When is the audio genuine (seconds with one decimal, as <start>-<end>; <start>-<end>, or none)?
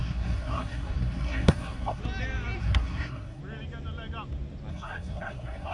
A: 2.0-2.6; 3.4-4.7